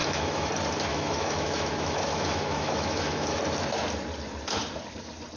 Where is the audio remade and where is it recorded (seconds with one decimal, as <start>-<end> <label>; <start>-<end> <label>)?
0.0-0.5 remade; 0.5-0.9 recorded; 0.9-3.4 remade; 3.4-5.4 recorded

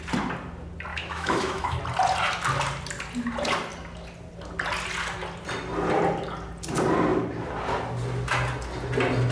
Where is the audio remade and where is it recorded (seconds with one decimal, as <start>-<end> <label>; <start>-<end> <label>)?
0.0-0.9 recorded; 0.9-1.8 remade; 1.8-9.3 recorded

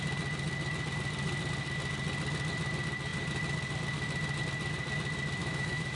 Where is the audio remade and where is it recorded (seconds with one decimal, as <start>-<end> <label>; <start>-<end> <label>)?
0.0-5.4 recorded; 5.4-6.0 remade

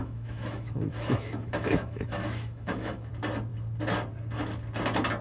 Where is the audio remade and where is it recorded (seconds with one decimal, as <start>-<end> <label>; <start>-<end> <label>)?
0.0-3.1 remade; 3.1-5.2 recorded